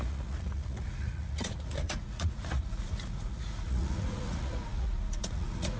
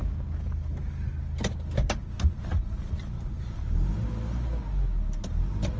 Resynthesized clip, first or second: first